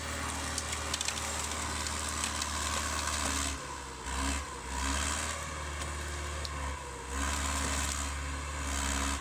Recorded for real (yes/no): yes